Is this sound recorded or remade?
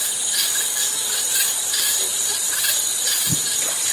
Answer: remade